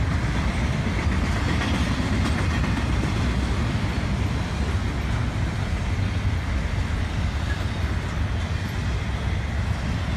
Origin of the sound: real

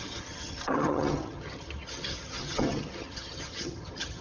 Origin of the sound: fake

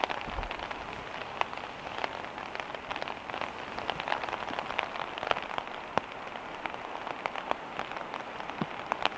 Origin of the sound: real